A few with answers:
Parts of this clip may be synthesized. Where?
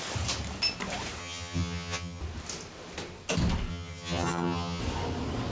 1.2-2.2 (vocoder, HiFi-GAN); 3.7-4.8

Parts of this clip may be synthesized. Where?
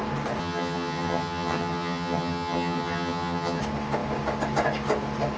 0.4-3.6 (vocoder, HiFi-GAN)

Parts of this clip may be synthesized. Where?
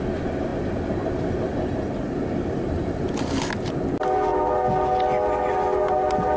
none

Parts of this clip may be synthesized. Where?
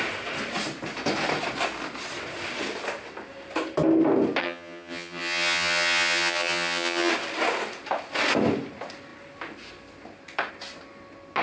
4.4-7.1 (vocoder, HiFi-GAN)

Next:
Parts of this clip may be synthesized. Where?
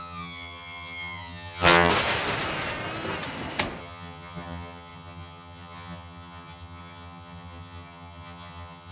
0.0-1.9 (vocoder, HiFi-GAN); 3.8-8.9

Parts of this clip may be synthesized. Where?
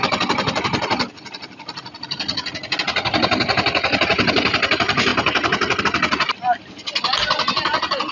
none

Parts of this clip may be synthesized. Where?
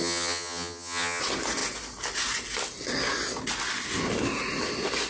0.0-1.2 (vocoder, HiFi-GAN)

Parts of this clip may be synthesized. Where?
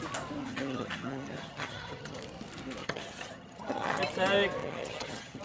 0.4-2.2 (vocoder, HiFi-GAN); 2.8-4.0; 4.6-5.4